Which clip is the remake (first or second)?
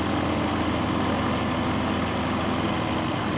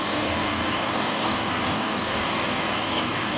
second